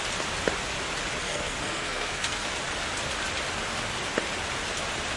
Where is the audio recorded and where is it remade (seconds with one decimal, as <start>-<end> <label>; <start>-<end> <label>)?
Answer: 0.0-1.2 recorded; 1.2-2.5 remade; 2.5-5.2 recorded